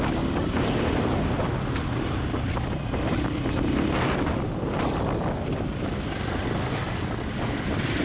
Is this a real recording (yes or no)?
yes